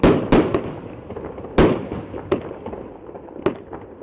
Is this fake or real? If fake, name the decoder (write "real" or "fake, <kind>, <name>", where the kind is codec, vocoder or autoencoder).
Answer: real